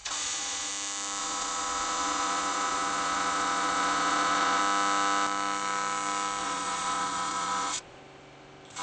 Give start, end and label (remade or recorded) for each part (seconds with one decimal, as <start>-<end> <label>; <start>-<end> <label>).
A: 0.0-0.7 remade; 0.7-1.2 recorded; 1.2-4.6 remade; 4.6-6.4 recorded; 6.4-8.0 remade; 8.0-8.8 recorded